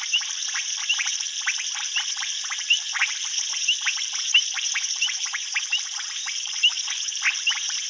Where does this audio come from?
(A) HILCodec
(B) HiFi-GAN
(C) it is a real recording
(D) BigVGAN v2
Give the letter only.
D